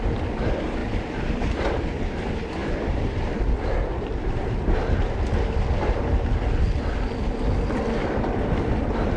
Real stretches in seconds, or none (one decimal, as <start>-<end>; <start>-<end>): 0.0-0.8; 1.7-2.6; 3.3-3.9; 5.0-9.2